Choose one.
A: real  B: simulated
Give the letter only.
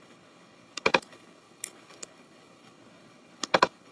B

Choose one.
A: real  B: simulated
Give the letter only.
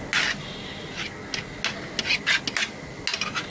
A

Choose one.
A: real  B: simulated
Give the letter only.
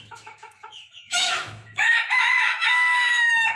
B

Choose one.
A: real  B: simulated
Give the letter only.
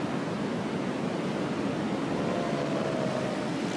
A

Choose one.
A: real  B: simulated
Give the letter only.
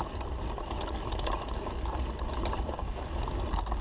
A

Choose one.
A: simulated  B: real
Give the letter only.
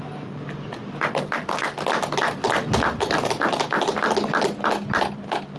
B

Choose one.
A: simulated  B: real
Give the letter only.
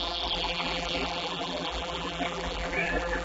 A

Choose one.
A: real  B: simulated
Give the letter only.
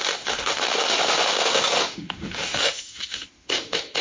B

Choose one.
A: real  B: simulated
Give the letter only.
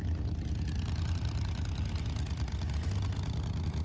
A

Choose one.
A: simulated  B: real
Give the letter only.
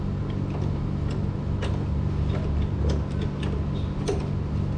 B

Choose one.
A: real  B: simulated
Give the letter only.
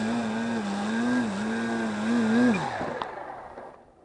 A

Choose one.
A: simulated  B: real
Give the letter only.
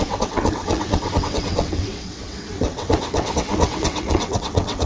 A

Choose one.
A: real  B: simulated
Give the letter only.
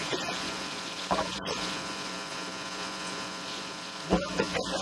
B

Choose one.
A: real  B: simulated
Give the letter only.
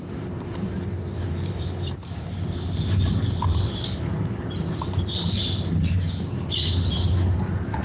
B